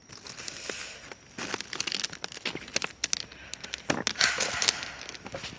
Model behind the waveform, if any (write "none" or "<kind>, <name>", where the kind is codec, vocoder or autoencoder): none